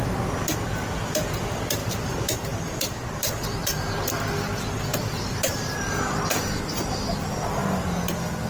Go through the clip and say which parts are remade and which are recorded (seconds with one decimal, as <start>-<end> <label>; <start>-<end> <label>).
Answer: 0.0-1.8 recorded; 1.8-4.1 remade; 4.1-4.9 recorded; 4.9-5.9 remade; 5.9-8.5 recorded